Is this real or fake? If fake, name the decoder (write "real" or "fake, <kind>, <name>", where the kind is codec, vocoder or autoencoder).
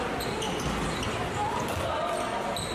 real